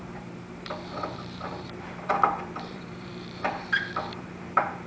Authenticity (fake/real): fake